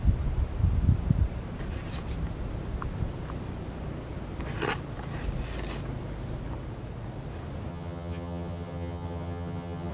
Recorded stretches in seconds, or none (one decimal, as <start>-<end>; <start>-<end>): 0.0-7.7